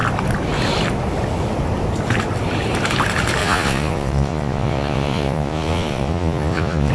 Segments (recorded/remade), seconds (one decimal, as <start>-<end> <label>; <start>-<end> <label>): 0.0-3.4 recorded; 3.4-6.9 remade